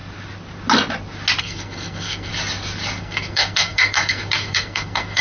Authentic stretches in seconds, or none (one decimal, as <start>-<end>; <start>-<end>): 0.0-1.4; 2.3-3.0